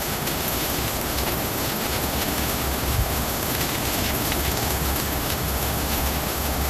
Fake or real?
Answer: fake